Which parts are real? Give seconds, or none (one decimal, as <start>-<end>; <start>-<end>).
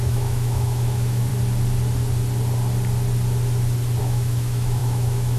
1.3-4.0